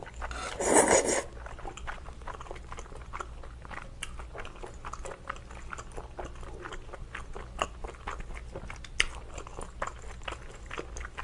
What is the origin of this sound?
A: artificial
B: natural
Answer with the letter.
B